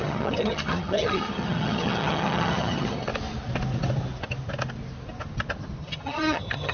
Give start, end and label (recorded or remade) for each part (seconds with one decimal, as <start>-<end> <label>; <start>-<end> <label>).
0.0-3.1 remade; 3.1-5.8 recorded; 5.8-6.7 remade